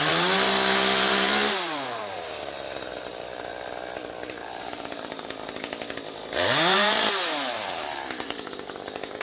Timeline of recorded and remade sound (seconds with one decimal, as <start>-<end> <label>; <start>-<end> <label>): 0.0-3.5 remade; 3.5-4.3 recorded; 4.3-9.2 remade

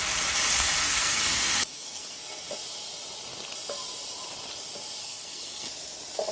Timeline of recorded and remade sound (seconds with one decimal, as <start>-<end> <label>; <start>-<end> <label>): 0.0-0.8 recorded; 0.8-2.2 remade; 2.2-5.0 recorded; 5.0-5.7 remade; 5.7-6.3 recorded